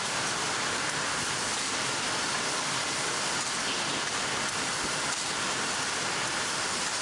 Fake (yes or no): yes